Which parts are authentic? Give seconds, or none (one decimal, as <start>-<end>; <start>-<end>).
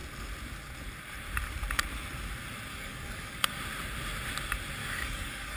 0.0-2.7; 3.6-4.8